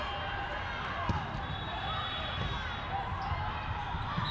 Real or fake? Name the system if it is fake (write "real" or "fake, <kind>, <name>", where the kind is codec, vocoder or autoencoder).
real